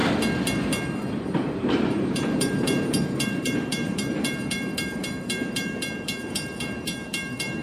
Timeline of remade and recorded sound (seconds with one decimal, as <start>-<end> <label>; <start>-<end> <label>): 0.0-1.4 recorded; 1.4-7.6 remade